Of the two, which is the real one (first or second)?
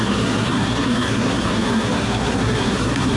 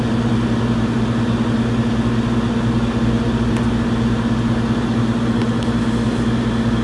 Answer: second